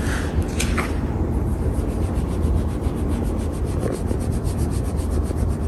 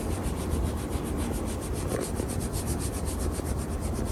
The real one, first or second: first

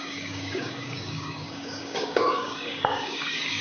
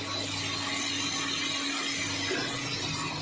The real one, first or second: second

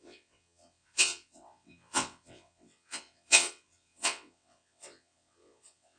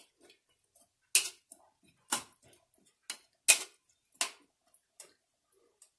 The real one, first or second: second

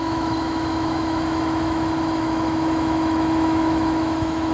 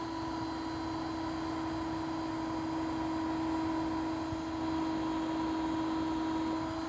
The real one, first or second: second